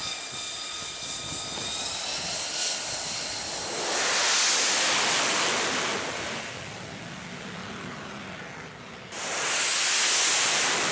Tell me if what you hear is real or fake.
real